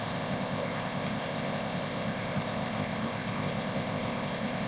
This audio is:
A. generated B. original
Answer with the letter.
A